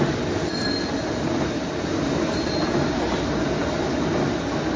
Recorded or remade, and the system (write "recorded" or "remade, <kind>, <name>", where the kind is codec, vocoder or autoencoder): recorded